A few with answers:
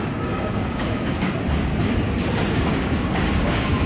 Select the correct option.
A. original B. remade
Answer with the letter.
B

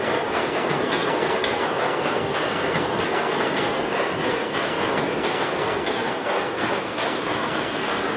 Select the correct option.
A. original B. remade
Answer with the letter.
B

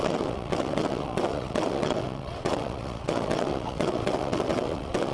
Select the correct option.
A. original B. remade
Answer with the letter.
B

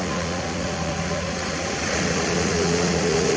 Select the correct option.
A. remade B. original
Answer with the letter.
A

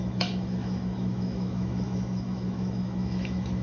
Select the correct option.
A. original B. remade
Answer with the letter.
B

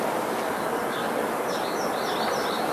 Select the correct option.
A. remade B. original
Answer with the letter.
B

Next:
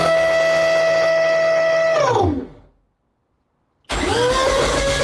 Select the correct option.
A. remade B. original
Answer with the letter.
B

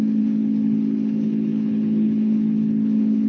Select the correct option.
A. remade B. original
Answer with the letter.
A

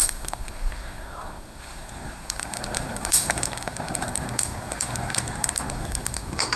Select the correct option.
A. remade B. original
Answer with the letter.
A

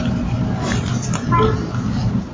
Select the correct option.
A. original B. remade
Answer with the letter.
A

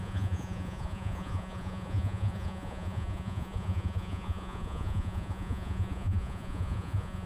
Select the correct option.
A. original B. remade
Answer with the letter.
B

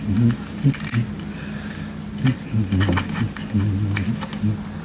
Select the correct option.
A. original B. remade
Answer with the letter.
A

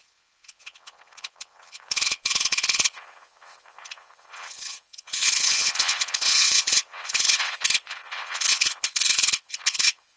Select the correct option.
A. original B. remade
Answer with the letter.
B